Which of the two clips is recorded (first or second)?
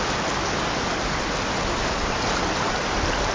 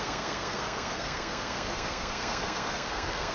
first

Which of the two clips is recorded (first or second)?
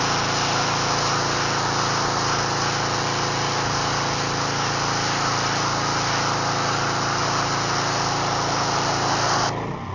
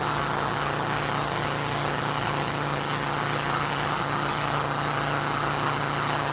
first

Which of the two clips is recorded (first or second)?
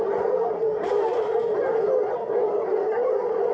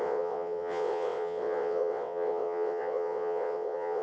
first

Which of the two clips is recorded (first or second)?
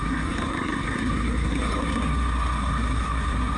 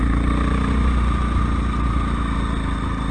second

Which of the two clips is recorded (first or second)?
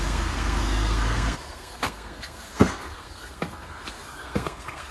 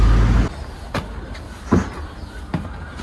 second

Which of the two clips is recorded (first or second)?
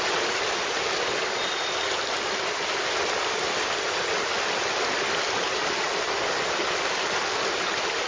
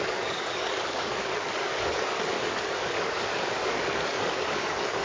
first